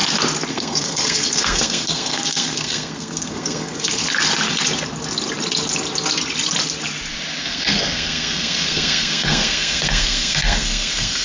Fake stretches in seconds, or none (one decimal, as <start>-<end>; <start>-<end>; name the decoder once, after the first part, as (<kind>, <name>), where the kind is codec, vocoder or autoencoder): 0.5-4.0 (codec, SNAC); 7.4-11.2